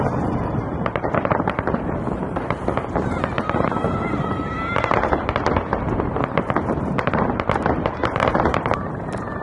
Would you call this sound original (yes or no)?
no